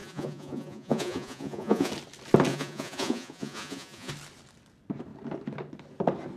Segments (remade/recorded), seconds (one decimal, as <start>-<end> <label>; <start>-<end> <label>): 0.0-1.9 remade; 1.9-2.5 recorded; 2.5-4.1 remade; 4.1-6.4 recorded